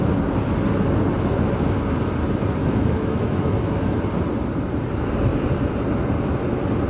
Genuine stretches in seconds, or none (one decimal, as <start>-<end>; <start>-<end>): 0.0-2.6; 4.0-6.9